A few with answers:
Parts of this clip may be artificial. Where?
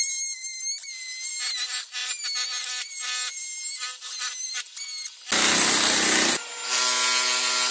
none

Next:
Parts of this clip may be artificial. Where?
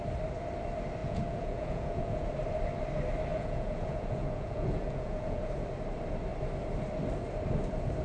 1.0-2.3 (vocoder, Vocos); 3.3-5.5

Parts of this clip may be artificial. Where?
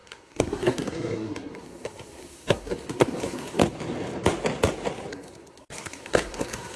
0.0-3.6 (codec, SNAC); 5.1-6.8